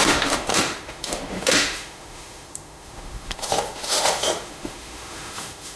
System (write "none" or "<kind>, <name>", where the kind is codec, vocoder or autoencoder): autoencoder, DAC-VAE